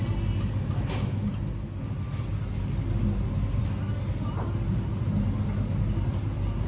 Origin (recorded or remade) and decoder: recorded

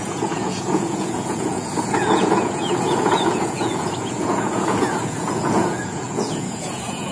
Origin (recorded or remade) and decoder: remade, vocoder, Vocos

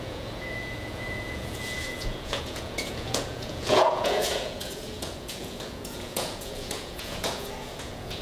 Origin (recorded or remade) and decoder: remade, vocoder, Vocos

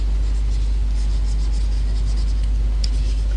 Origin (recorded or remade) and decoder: recorded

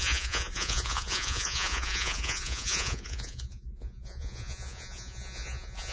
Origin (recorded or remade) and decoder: remade, vocoder, Vocos